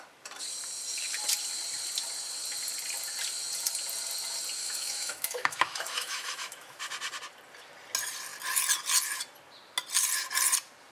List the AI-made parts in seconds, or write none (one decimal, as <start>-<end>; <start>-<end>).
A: 4.6-6.8